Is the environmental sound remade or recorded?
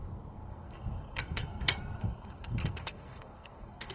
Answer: remade